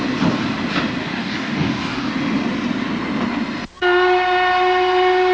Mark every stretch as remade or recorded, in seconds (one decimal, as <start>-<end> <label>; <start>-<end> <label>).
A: 0.0-1.0 recorded; 1.0-2.1 remade; 2.1-5.3 recorded